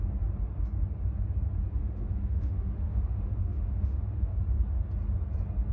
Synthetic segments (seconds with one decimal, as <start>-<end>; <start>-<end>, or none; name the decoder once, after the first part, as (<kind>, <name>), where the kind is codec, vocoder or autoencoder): 1.8-4.4 (autoencoder, DAC-VAE)